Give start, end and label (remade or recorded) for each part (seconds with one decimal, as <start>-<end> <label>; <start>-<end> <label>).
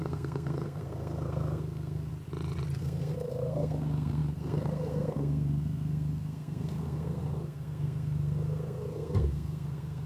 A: 0.0-2.1 remade; 2.1-2.8 recorded; 2.8-10.1 remade